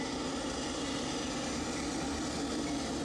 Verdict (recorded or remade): recorded